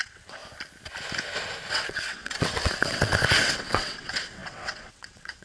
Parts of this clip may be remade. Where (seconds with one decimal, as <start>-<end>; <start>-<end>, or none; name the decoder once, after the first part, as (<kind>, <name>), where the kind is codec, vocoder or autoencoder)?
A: 0.0-0.4 (vocoder, WaveNeXt); 1.7-5.4

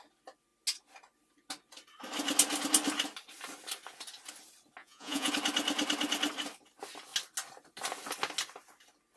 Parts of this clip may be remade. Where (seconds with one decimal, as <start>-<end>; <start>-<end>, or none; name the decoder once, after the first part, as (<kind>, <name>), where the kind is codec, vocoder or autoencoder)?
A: 4.8-5.3 (vocoder, Vocos)

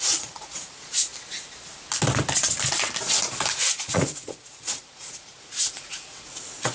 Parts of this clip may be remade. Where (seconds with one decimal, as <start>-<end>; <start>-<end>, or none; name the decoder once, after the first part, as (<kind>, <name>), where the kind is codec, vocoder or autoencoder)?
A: 0.0-1.1 (vocoder, Vocos); 3.5-6.7

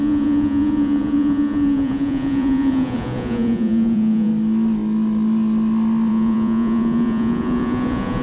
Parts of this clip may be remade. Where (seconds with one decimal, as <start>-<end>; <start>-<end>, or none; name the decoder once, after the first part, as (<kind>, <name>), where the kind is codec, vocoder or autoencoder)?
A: 0.0-4.3 (vocoder, Vocos); 6.1-8.2

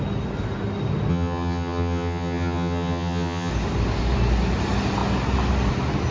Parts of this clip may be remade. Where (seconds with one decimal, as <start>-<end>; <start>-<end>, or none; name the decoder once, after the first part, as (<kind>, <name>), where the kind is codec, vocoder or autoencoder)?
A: 1.1-3.5 (vocoder, HiFi-GAN)